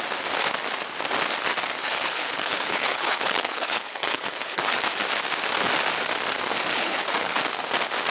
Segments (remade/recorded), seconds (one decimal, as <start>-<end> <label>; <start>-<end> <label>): 0.0-1.8 recorded; 1.8-4.8 remade; 4.8-6.7 recorded; 6.7-7.4 remade; 7.4-8.1 recorded